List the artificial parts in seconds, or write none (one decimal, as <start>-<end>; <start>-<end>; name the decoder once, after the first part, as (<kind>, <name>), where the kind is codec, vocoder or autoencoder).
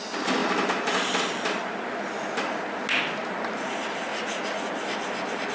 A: 4.1-4.7 (vocoder, Vocos)